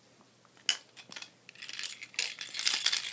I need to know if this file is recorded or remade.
recorded